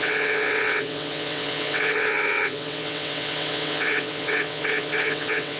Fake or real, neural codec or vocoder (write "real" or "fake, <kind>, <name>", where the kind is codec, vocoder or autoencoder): fake, vocoder, WaveNeXt